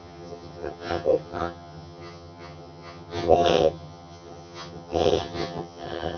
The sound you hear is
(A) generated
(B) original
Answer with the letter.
A